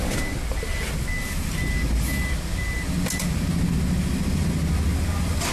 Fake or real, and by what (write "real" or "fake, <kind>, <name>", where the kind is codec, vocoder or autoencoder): real